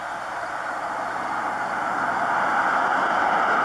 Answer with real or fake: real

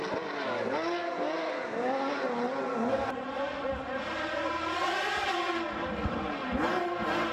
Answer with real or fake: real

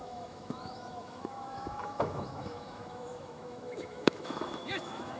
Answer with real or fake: fake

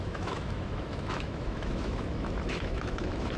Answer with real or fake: fake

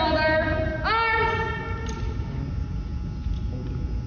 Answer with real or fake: real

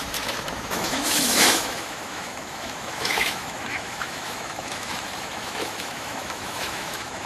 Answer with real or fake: fake